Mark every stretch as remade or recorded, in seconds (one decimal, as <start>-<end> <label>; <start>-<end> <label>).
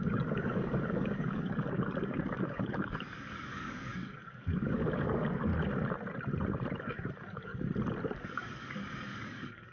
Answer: 0.0-5.5 remade; 5.5-6.8 recorded; 6.8-7.5 remade; 7.5-8.2 recorded; 8.2-9.7 remade